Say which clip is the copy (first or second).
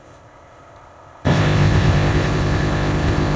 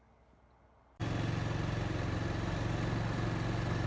first